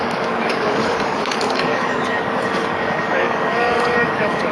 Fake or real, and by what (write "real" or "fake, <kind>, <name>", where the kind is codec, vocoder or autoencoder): fake, codec, DAC